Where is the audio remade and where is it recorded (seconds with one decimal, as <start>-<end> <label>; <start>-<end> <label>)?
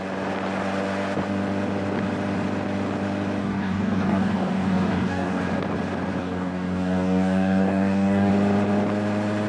0.0-3.4 recorded; 3.4-5.4 remade; 5.4-6.2 recorded; 6.2-8.3 remade; 8.3-9.5 recorded